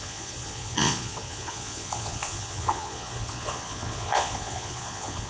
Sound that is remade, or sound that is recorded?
remade